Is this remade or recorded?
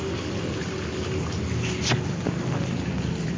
recorded